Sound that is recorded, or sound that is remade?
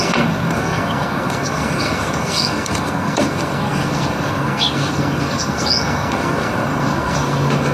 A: remade